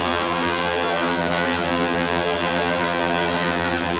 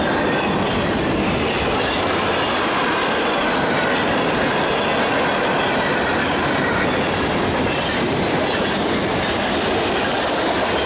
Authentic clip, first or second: second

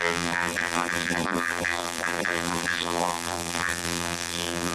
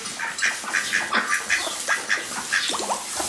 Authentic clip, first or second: second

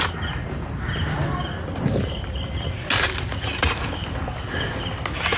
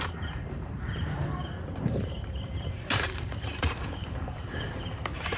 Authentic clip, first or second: first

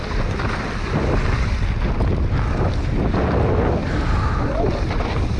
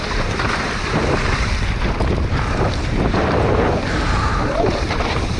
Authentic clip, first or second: first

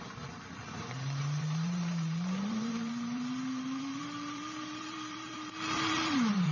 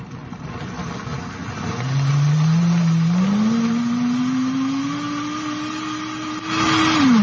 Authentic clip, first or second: second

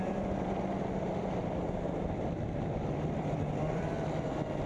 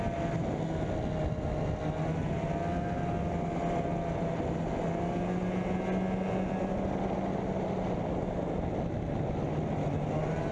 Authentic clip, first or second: second